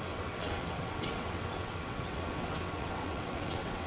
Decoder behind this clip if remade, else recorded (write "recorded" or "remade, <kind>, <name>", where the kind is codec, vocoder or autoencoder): remade, vocoder, WaveNeXt